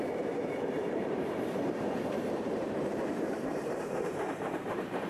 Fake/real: fake